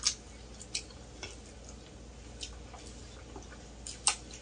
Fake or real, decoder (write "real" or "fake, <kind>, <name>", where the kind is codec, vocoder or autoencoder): real